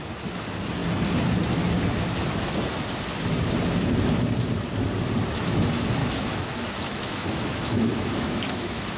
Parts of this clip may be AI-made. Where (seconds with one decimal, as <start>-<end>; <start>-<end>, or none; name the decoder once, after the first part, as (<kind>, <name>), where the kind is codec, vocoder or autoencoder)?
6.0-9.0 (autoencoder, DAC-VAE)